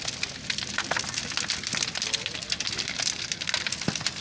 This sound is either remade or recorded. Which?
recorded